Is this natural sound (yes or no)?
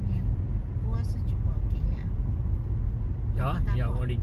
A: yes